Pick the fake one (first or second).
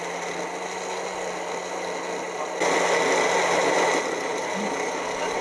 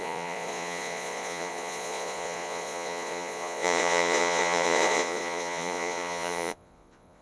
second